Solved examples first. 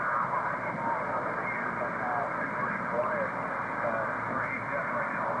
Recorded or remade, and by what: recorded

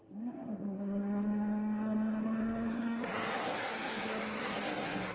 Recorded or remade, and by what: remade, codec, SNAC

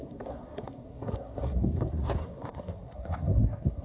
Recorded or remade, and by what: remade, codec, SNAC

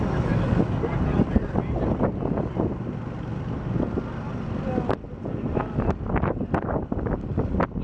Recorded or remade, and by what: recorded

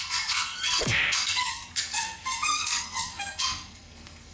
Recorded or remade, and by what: remade, codec, SNAC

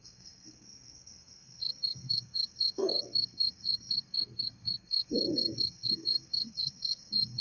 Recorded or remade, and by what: remade, codec, SNAC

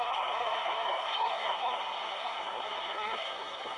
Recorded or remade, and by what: remade, codec, SNAC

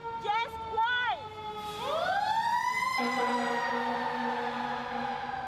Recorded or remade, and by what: recorded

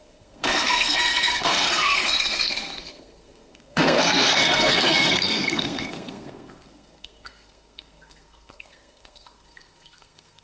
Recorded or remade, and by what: remade, codec, SNAC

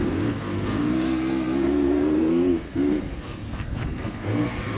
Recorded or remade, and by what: remade, codec, SNAC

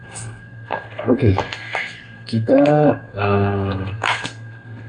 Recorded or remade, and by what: remade, codec, SNAC